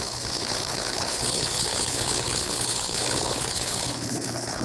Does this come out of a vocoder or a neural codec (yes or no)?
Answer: yes